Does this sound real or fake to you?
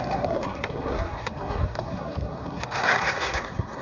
fake